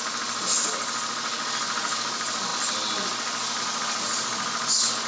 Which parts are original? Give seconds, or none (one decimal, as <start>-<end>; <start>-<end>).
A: 0.0-5.1